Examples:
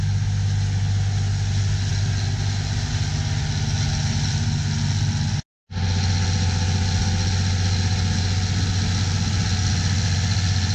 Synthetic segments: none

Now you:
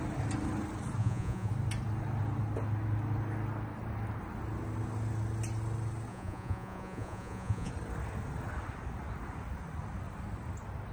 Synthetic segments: 1.0-1.5 (vocoder, Vocos); 6.1-7.7

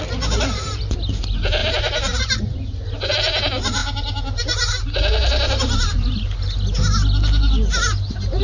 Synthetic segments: none

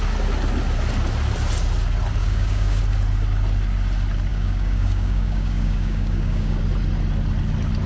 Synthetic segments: 2.2-2.8 (codec, DAC); 4.3-6.6